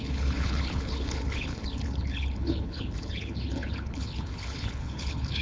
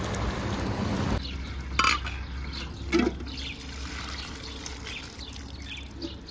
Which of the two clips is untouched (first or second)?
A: second